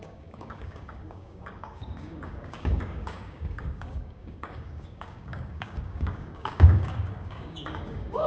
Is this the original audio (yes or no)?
no